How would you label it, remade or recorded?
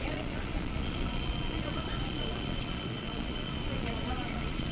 remade